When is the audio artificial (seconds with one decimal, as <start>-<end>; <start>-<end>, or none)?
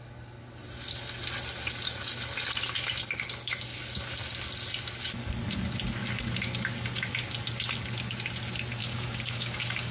8.8-9.9